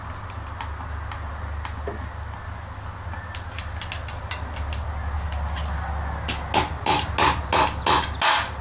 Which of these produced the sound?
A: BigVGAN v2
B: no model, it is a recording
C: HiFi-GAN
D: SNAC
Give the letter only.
B